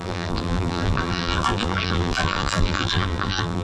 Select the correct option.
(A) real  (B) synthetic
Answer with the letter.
B